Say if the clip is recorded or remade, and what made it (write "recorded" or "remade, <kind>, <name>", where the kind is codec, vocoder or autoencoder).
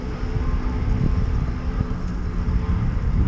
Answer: recorded